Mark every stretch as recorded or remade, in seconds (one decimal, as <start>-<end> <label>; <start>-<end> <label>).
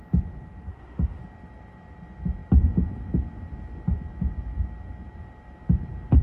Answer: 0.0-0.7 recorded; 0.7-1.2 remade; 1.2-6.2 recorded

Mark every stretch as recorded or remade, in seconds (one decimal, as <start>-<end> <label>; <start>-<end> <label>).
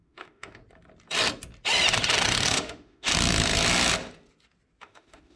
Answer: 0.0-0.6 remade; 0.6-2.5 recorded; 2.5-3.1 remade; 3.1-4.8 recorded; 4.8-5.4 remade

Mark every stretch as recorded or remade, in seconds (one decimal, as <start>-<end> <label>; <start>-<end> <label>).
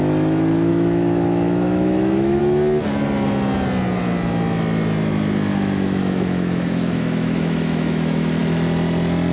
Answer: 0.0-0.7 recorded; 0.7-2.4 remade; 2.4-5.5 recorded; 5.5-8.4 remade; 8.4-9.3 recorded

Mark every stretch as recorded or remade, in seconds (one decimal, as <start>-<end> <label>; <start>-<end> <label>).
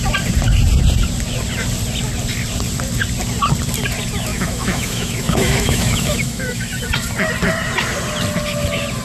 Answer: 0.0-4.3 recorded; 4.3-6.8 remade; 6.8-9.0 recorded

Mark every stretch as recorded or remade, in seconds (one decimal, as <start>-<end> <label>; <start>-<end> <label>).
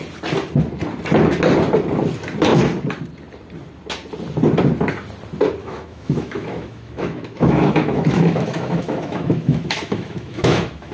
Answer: 0.0-5.6 recorded; 5.6-10.9 remade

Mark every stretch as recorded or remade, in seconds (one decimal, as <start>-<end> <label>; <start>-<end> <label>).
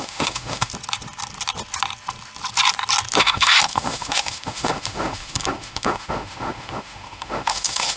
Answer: 0.0-0.7 remade; 0.7-3.2 recorded; 3.2-8.0 remade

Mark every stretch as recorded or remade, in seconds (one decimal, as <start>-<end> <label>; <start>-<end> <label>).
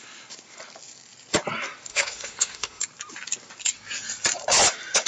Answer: 0.0-1.9 recorded; 1.9-2.8 remade; 2.8-5.1 recorded